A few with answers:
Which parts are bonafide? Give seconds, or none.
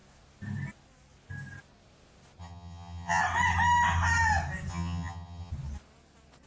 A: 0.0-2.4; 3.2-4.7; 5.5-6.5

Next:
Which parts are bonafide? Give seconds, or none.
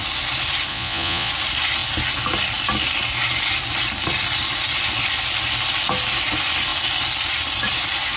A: 0.0-0.7; 1.3-8.2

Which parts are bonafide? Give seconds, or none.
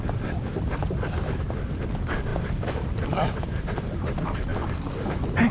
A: 0.0-0.5; 1.2-2.3; 3.2-5.5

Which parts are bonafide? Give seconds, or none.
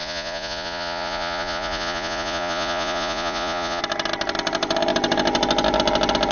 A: 3.8-6.3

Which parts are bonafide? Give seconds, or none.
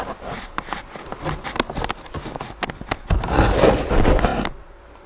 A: 0.0-5.1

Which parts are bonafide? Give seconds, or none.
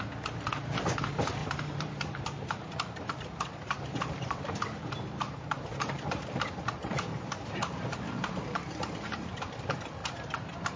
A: 0.0-1.4; 6.5-7.1; 9.6-10.0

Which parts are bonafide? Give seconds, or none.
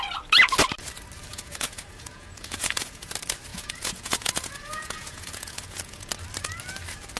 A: 0.0-1.3; 3.1-3.5; 6.1-7.2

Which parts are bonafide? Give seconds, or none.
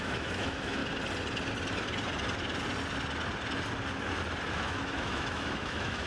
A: 0.8-4.5